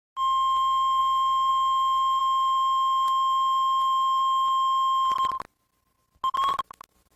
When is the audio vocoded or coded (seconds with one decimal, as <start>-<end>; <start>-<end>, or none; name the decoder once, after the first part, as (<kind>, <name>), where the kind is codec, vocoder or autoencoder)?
none

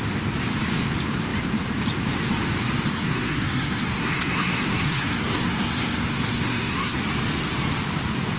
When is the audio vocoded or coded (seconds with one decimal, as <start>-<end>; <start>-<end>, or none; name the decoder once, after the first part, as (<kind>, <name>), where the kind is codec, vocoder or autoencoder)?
2.9-7.0 (codec, SNAC)

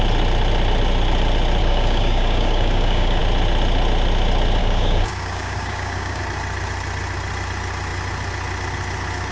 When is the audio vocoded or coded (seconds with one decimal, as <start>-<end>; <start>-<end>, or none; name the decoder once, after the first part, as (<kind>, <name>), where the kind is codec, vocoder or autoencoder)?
1.6-3.2 (codec, DAC); 4.6-6.2

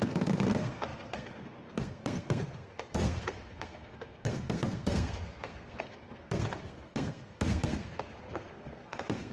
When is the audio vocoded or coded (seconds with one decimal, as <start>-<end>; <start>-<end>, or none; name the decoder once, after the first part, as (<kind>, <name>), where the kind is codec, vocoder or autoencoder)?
0.0-9.3 (codec, SNAC)

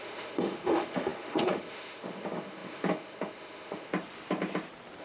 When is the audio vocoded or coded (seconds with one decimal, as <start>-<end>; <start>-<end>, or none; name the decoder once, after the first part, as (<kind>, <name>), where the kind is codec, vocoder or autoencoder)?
0.0-3.9 (autoencoder, DAC-VAE)

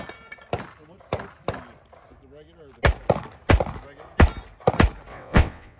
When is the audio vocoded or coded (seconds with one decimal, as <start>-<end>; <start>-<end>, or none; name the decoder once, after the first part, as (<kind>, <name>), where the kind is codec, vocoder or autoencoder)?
5.1-5.8 (vocoder, WaveNeXt)

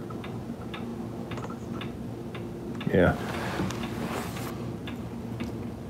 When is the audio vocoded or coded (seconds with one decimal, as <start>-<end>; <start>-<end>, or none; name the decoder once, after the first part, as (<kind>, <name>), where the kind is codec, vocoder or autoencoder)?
none

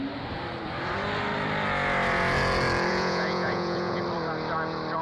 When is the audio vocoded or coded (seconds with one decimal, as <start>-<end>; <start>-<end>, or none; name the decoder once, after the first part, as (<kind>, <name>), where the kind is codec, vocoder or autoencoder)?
2.9-4.0 (vocoder, Vocos)